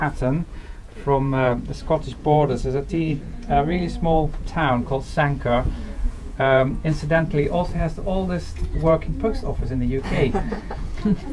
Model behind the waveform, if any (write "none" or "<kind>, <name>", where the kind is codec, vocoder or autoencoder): vocoder, Vocos